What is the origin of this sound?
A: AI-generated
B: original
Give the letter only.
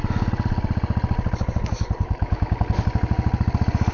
B